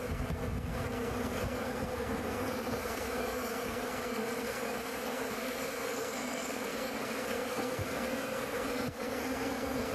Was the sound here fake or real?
fake